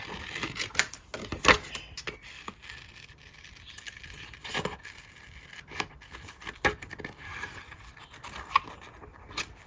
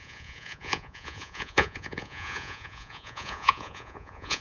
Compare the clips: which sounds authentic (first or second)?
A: first